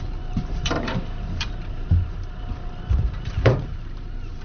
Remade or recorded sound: remade